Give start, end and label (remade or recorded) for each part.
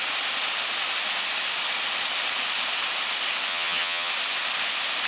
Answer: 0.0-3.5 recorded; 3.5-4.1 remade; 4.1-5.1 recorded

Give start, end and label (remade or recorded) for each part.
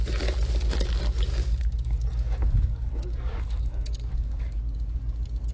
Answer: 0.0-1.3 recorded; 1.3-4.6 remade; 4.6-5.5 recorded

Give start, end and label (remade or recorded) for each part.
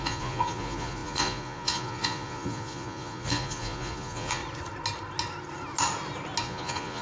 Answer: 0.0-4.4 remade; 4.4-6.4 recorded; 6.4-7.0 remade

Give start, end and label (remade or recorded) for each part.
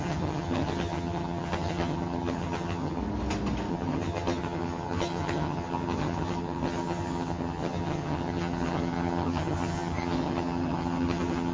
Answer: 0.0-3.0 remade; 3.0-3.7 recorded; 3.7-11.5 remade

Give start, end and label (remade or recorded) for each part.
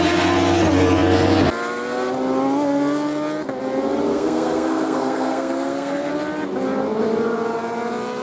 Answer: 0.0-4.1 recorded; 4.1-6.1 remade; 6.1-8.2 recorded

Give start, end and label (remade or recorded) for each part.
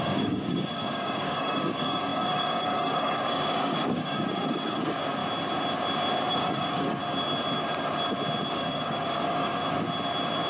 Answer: 0.0-5.2 remade; 5.2-6.3 recorded; 6.3-7.0 remade; 7.0-8.5 recorded; 8.5-9.6 remade; 9.6-10.5 recorded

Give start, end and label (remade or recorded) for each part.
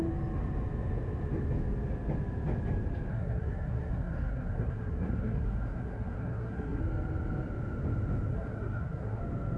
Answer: 0.0-3.1 recorded; 3.1-6.8 remade; 6.8-8.3 recorded; 8.3-9.2 remade; 9.2-9.6 recorded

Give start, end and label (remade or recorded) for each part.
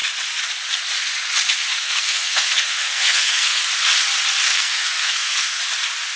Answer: 0.0-1.7 recorded; 1.7-3.6 remade; 3.6-4.5 recorded; 4.5-5.6 remade; 5.6-6.2 recorded